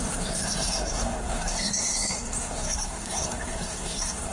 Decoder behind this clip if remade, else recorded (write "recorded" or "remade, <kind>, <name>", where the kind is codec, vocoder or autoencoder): remade, codec, SNAC